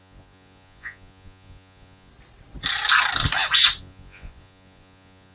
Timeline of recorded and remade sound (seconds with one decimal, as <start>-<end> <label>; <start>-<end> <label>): 0.0-2.1 remade; 2.1-3.8 recorded; 3.8-5.3 remade